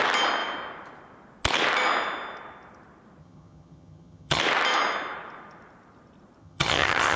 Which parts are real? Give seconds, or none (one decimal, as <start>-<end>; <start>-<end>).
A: 0.0-3.2; 4.4-6.4